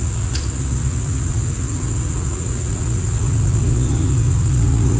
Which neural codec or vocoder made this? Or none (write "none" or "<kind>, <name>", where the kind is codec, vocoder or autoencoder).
vocoder, Vocos